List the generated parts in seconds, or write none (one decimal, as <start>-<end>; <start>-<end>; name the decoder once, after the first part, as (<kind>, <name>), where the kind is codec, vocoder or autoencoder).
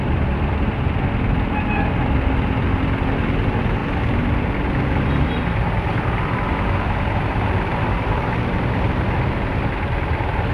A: none